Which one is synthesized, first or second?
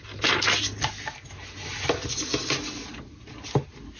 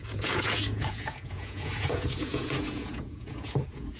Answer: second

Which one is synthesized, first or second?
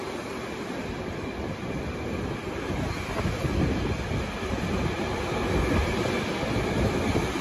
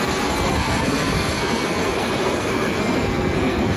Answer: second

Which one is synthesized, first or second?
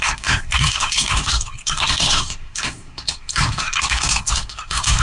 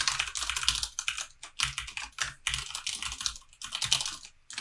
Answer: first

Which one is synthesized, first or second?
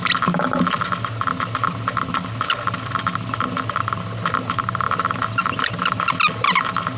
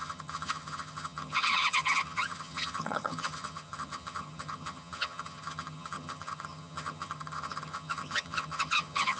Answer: second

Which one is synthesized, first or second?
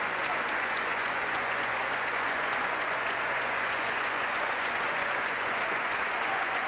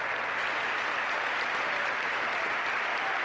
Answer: first